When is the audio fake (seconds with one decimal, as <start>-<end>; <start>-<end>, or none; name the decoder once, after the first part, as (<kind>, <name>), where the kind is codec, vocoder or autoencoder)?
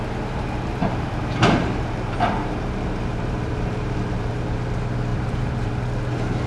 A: 0.8-4.6 (vocoder, BigVGAN v2); 5.1-5.7